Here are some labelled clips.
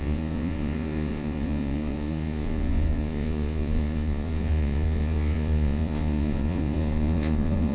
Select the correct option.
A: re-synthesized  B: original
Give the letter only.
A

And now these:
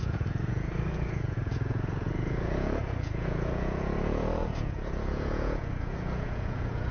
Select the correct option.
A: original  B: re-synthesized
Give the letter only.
B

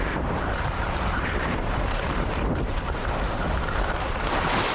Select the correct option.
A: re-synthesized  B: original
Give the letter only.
A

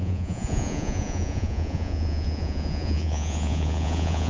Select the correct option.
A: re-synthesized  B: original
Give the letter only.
A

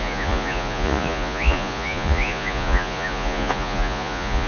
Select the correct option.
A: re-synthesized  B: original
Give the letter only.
A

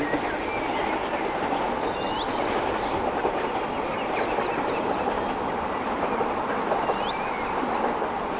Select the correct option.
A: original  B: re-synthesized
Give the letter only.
A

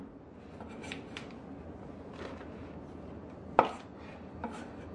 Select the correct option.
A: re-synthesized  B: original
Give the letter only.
B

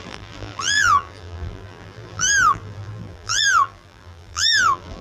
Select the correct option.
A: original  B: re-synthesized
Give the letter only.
B